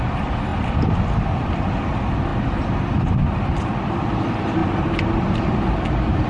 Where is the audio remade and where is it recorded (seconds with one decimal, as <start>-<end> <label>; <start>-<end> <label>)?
0.0-2.3 remade; 2.3-3.9 recorded; 3.9-6.3 remade